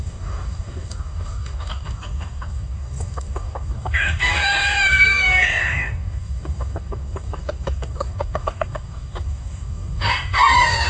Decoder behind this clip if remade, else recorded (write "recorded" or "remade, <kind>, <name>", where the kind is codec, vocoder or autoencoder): remade, codec, DAC